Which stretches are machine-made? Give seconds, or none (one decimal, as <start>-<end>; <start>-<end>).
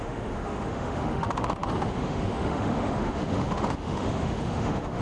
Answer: 0.0-5.0